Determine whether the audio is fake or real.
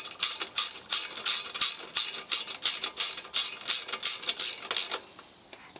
real